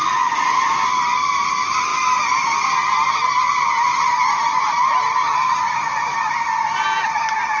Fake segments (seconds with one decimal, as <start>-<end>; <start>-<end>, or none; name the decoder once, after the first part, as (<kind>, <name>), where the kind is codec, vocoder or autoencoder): none